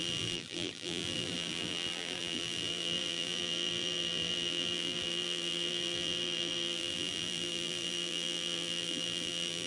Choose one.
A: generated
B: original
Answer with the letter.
A